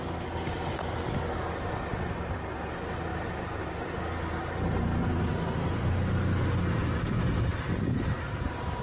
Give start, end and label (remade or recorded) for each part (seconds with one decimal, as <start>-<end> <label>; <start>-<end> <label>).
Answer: 0.0-8.8 recorded